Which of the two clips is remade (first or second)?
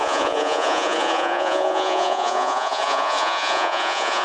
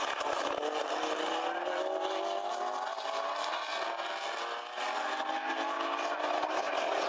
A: first